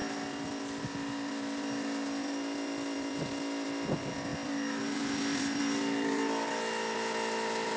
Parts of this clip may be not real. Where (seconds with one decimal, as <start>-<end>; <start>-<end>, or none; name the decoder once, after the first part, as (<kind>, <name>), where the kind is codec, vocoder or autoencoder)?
none

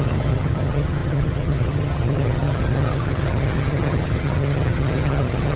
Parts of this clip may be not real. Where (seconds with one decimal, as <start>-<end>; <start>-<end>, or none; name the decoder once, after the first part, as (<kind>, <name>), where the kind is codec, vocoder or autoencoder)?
0.0-5.6 (vocoder, HiFi-GAN)

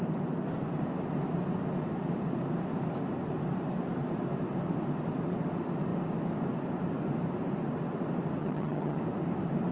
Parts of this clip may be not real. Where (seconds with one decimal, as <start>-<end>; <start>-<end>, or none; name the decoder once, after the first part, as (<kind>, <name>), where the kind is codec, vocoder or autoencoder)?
8.4-9.0 (vocoder, HiFi-GAN)